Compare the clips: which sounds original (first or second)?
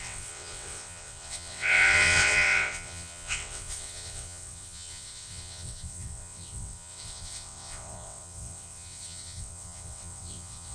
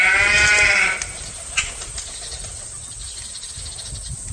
second